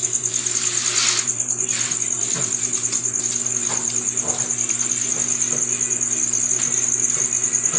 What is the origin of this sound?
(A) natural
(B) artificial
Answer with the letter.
A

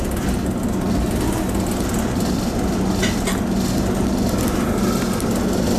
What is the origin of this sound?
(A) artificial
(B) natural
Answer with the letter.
B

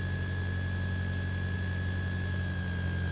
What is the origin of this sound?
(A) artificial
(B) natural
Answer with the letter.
B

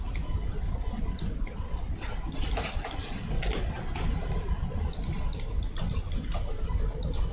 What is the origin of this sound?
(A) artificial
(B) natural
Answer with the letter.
B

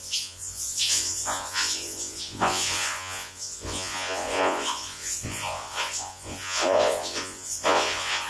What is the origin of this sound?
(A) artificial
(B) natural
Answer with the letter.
A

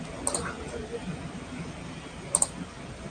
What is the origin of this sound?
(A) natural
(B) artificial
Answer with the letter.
A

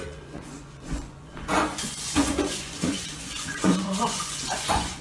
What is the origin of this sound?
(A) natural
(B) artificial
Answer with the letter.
B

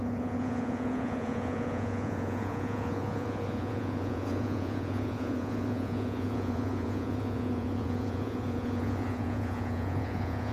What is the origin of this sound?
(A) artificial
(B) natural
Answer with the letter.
A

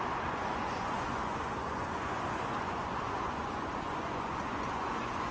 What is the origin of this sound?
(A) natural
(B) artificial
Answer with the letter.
B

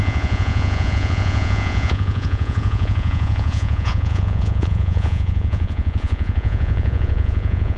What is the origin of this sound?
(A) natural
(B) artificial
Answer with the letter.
B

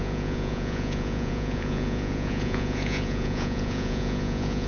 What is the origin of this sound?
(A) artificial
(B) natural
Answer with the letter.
A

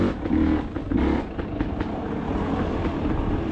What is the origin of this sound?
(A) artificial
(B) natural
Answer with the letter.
B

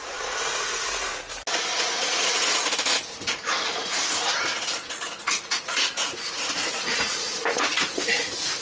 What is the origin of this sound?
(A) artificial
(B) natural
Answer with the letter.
A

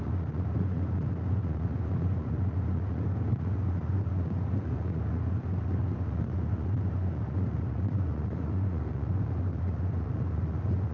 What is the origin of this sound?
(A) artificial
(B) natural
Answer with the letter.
A